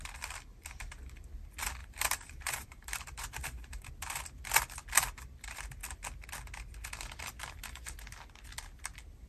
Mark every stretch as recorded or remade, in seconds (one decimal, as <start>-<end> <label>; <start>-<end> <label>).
0.0-1.8 recorded; 1.8-3.9 remade; 3.9-9.3 recorded